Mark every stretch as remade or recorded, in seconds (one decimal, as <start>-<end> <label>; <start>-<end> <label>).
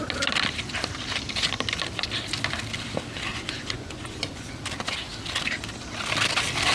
0.0-3.3 recorded; 3.3-4.6 remade; 4.6-6.7 recorded